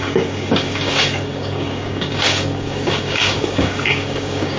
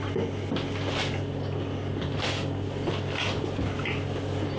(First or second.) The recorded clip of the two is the second